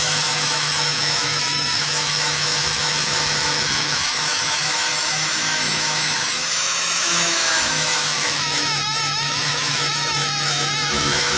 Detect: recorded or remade remade